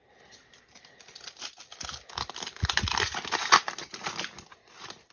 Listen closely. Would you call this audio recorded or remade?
recorded